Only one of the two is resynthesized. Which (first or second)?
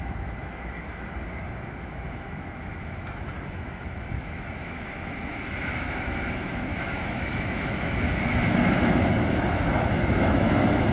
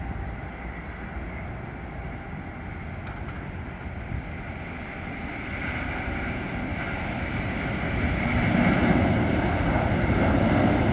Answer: first